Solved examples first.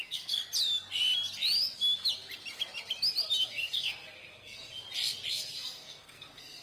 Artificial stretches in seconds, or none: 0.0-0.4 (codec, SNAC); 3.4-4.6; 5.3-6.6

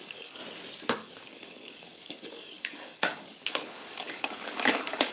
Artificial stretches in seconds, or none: 0.0-0.4 (codec, DAC); 0.9-5.1

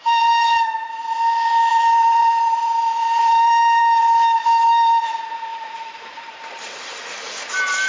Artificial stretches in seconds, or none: 0.4-1.1 (vocoder, BigVGAN v2); 1.7-3.8; 5.5-7.0

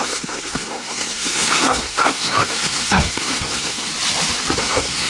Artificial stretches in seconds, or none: 0.0-3.9 (codec, SNAC); 4.6-5.1